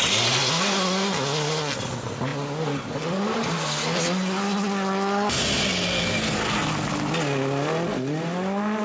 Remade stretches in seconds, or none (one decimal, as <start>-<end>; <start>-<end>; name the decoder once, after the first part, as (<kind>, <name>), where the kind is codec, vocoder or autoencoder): none